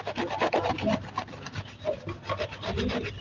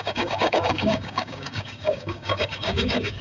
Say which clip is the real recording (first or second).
first